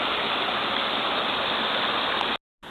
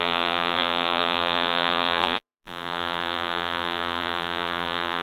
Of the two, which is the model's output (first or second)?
second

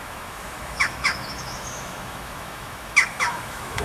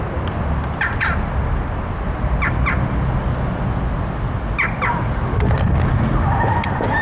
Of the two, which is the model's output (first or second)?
first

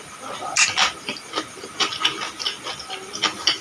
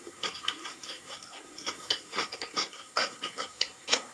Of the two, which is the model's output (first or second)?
second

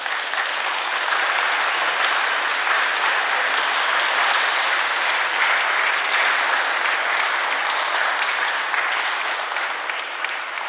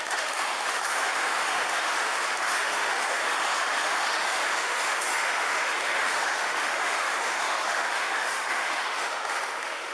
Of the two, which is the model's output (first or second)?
second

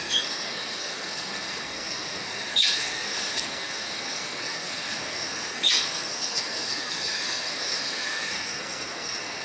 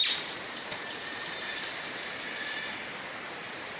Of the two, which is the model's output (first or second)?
first